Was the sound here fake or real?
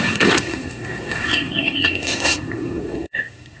fake